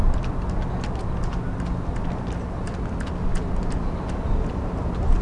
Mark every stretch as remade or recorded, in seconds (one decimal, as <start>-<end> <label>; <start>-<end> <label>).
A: 0.0-5.2 recorded